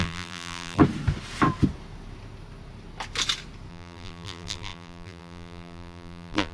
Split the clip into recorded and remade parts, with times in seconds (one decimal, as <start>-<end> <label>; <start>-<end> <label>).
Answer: 0.0-0.8 remade; 0.8-3.7 recorded; 3.7-6.5 remade